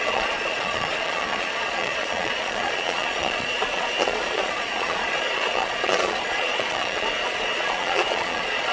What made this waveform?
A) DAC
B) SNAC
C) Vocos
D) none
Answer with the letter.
C